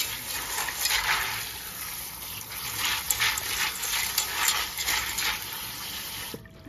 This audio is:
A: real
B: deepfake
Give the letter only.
A